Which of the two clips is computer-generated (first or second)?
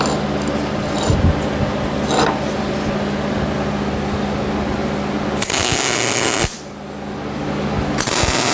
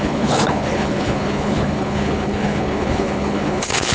second